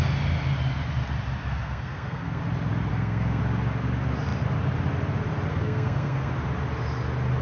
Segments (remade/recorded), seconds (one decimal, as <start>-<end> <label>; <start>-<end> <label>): 0.0-1.5 recorded; 1.5-2.4 remade; 2.4-2.9 recorded; 2.9-3.4 remade; 3.4-5.5 recorded; 5.5-6.3 remade; 6.3-7.4 recorded